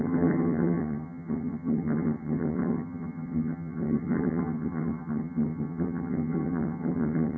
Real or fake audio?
fake